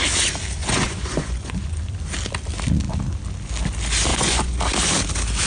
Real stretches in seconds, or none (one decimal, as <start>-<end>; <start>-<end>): 0.0-0.6; 1.8-4.1; 4.6-5.5